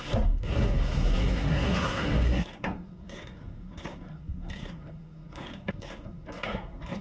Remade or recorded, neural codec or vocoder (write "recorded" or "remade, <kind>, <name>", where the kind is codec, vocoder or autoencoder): remade, codec, SNAC